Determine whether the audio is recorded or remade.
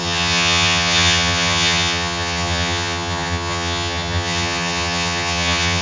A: remade